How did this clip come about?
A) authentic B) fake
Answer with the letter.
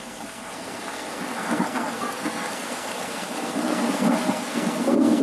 B